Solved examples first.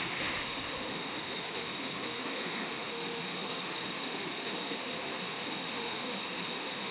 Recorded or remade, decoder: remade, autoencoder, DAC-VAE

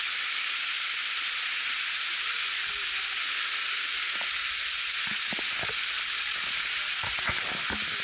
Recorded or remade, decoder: recorded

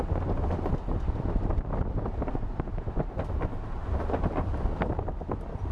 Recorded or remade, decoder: recorded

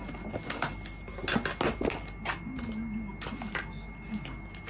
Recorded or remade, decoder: recorded